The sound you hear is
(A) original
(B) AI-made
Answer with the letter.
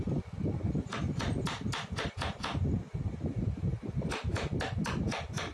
A